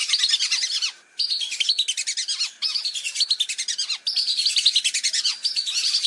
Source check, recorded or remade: recorded